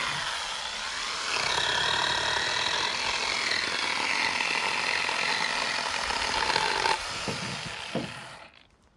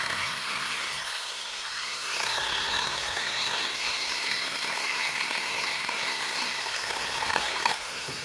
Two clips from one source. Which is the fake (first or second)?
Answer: second